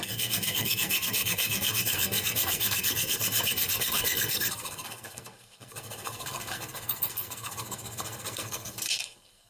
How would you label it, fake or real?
fake